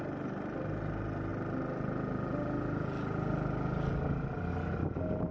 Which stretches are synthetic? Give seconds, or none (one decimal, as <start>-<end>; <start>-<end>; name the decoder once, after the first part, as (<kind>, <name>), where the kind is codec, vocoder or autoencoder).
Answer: none